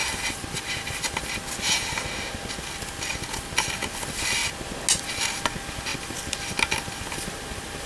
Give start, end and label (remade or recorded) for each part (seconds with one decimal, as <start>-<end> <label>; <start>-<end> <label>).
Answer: 0.0-1.4 remade; 1.4-5.9 recorded; 5.9-7.9 remade